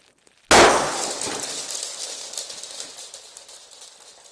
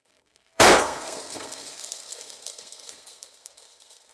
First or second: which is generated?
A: second